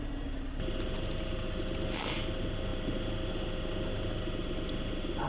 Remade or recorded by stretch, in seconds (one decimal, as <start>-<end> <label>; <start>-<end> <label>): 0.0-5.3 recorded